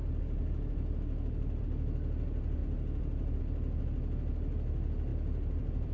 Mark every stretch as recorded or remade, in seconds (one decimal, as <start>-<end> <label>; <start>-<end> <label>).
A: 0.0-1.6 remade; 1.6-2.6 recorded; 2.6-3.4 remade; 3.4-5.1 recorded; 5.1-5.9 remade